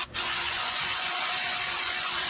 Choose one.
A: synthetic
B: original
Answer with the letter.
A